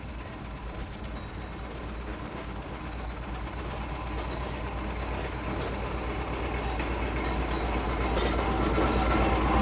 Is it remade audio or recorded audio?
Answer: recorded